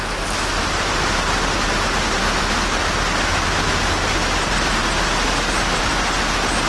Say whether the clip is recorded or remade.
recorded